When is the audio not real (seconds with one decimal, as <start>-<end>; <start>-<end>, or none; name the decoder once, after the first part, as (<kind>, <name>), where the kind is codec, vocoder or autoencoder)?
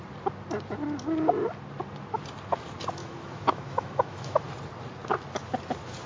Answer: 3.0-4.5 (autoencoder, DAC-VAE)